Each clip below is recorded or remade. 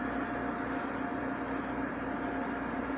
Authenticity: recorded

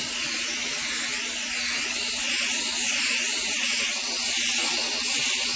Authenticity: recorded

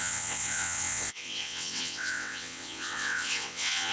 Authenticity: remade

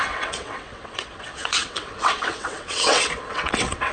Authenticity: remade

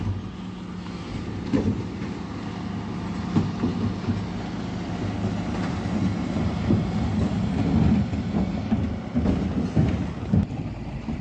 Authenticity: recorded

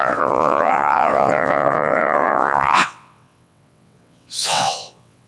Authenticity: remade